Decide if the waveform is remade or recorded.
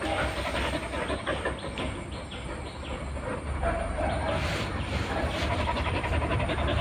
recorded